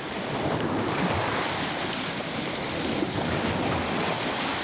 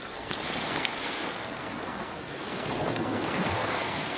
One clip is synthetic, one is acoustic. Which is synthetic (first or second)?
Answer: second